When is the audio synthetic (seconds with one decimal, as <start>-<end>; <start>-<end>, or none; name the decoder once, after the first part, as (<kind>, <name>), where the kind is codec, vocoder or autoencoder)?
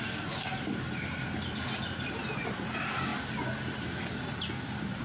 none